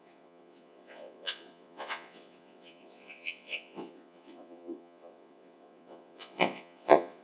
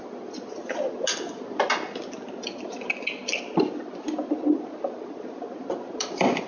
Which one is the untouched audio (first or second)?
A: second